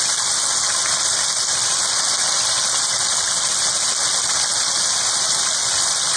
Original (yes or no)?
yes